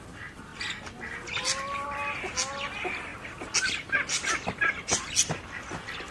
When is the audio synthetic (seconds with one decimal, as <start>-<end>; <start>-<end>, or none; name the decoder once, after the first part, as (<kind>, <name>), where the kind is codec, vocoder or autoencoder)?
none